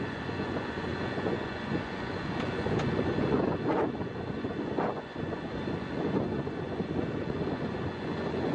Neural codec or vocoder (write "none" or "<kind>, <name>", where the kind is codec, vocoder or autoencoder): vocoder, Vocos